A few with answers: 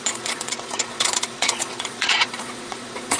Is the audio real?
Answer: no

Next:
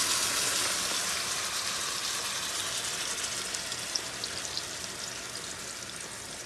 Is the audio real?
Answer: yes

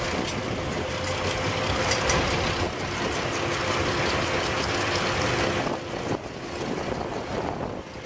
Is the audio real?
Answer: yes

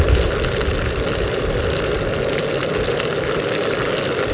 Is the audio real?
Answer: yes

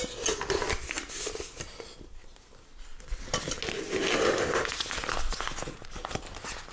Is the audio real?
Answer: yes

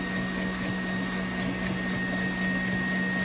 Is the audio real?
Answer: yes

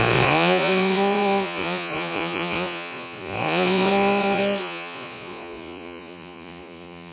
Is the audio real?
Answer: no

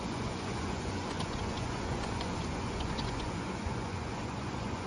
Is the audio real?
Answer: no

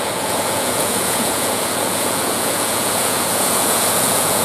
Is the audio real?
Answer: no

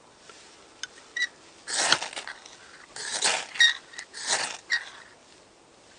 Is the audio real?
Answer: yes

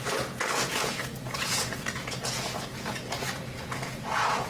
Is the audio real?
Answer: no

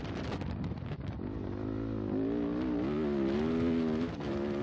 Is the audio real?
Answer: yes